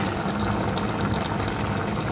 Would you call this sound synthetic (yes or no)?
no